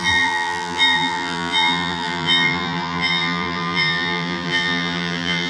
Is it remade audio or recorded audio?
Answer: remade